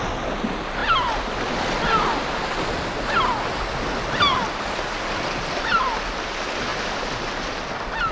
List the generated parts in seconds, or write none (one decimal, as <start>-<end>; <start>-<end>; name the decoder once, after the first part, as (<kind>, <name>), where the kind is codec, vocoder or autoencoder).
none